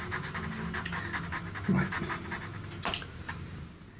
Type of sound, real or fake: real